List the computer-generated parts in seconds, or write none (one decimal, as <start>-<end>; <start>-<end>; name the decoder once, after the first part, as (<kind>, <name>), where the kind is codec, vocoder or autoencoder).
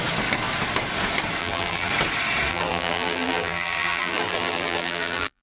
1.4-1.9 (vocoder, BigVGAN v2); 2.5-5.4